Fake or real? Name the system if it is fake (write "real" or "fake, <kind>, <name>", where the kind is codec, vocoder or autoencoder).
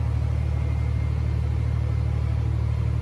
real